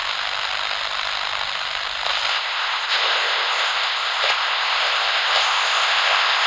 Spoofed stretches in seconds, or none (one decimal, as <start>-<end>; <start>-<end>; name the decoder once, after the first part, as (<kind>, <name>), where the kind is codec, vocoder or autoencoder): 2.3-6.5 (codec, ZipCodec)